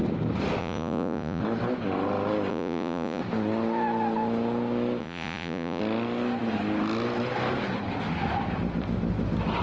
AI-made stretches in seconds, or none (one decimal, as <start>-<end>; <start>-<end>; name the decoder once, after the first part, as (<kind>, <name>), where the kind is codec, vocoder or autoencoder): 0.6-1.4 (vocoder, Vocos); 2.5-3.2; 5.0-5.8